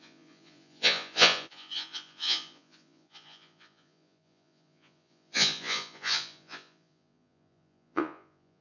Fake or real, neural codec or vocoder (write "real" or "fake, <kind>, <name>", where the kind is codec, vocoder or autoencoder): fake, vocoder, Vocos